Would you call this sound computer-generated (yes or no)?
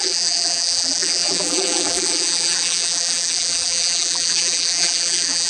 yes